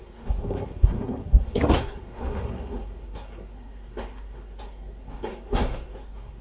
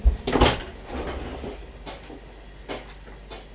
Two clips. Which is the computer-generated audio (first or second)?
first